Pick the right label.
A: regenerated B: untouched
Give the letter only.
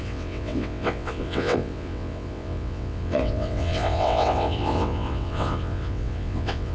A